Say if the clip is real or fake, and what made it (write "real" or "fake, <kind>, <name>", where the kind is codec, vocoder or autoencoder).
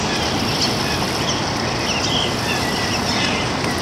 real